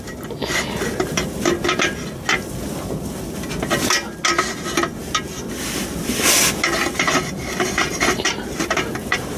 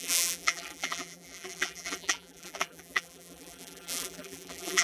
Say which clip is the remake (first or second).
second